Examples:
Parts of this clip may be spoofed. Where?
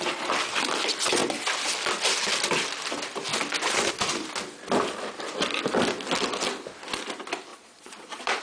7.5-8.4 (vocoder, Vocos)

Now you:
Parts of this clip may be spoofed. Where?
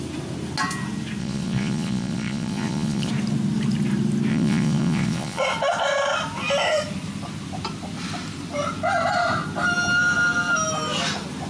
1.2-3.1 (vocoder, Vocos); 4.3-5.4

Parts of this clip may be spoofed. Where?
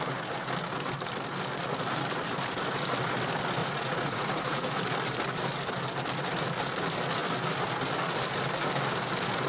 3.6-4.8 (vocoder, Vocos)